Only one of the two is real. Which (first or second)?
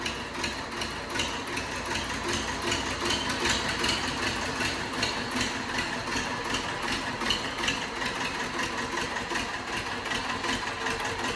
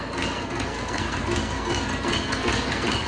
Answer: first